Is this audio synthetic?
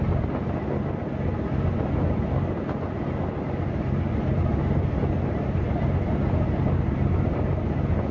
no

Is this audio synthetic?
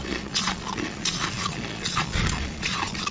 yes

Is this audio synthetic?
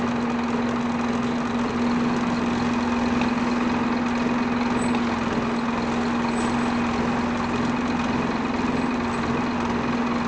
no